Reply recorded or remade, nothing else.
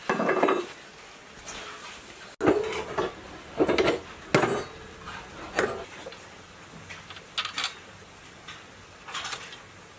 recorded